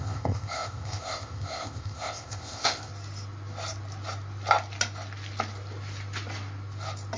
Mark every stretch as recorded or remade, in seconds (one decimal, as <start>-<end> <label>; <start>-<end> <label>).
0.0-2.9 remade; 2.9-7.2 recorded